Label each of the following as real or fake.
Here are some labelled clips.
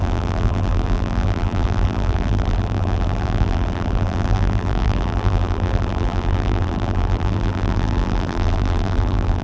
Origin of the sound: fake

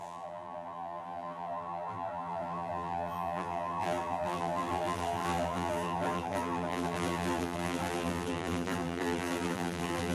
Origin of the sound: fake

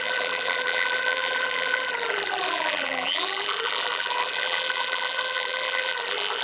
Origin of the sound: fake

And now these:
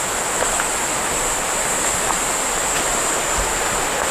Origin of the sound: real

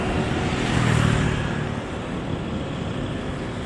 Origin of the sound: real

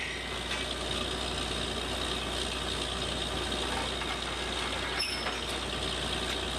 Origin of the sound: real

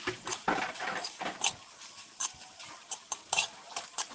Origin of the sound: fake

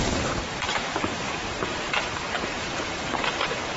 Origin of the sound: fake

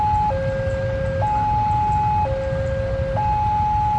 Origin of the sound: real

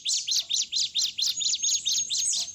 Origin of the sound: real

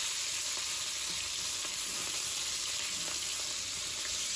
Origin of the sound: real